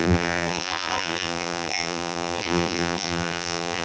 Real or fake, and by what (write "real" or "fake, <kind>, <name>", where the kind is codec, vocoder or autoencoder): fake, vocoder, BigVGAN v2